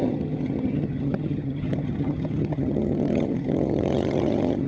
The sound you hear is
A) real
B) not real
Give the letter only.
B